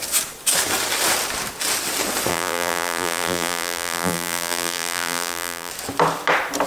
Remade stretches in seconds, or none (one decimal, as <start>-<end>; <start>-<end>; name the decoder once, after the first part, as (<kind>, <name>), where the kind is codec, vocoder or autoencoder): 2.3-5.7 (vocoder, BigVGAN v2)